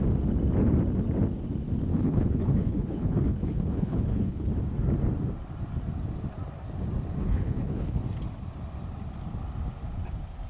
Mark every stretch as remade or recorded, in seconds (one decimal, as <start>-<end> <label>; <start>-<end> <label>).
0.0-1.9 recorded; 1.9-4.5 remade; 4.5-7.2 recorded; 7.2-8.0 remade; 8.0-10.5 recorded